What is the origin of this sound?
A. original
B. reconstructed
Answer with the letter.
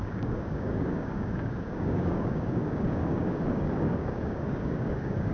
B